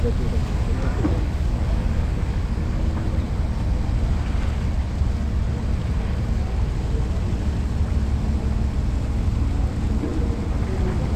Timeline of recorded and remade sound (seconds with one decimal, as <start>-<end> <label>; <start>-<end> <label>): 0.0-0.4 recorded; 0.4-2.9 remade; 2.9-11.2 recorded